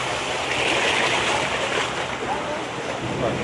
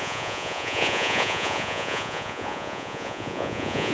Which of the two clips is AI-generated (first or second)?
second